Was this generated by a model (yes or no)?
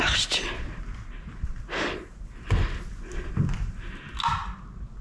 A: no